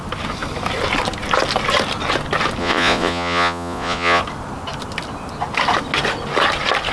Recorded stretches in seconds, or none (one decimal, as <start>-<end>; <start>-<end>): 0.0-2.6; 4.2-6.9